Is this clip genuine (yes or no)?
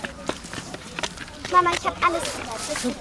no